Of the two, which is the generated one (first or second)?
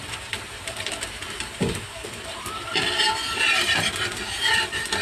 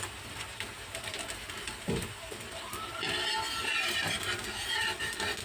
first